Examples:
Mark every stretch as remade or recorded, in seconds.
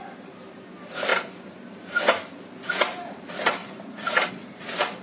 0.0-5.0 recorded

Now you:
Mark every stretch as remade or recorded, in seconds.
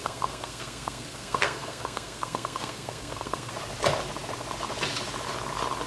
0.0-3.5 remade; 3.5-5.9 recorded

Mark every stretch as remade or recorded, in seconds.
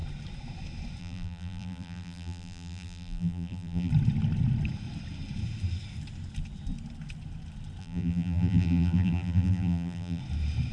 0.0-1.0 recorded; 1.0-3.9 remade; 3.9-7.8 recorded; 7.8-10.2 remade; 10.2-10.7 recorded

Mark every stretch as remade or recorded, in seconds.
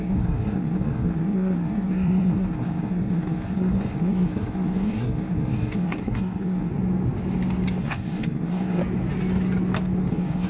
0.0-6.7 remade; 6.7-7.8 recorded; 7.8-8.8 remade; 8.8-10.1 recorded; 10.1-10.5 remade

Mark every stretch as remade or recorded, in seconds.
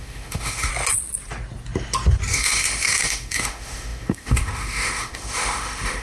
0.0-0.7 remade; 0.7-2.3 recorded; 2.3-6.0 remade